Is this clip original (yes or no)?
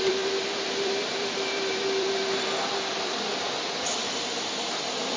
no